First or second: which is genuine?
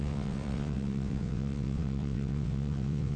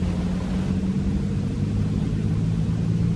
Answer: second